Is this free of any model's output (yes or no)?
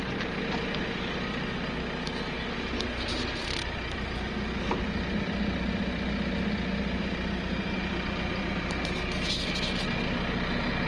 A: yes